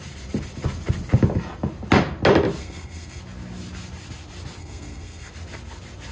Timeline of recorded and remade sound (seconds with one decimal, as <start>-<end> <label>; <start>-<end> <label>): 0.0-2.6 recorded; 2.6-3.2 remade; 3.2-4.6 recorded; 4.6-5.3 remade; 5.3-6.1 recorded